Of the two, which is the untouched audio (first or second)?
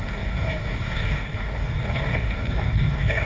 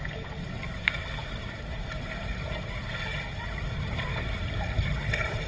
second